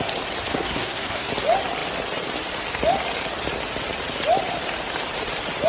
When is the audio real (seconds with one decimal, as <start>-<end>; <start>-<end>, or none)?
0.0-0.5; 1.3-5.7